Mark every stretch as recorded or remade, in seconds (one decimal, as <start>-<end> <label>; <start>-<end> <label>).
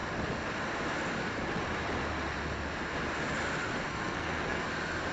0.0-3.9 recorded; 3.9-4.6 remade; 4.6-5.1 recorded